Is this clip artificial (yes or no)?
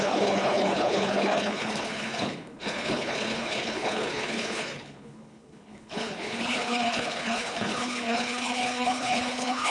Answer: yes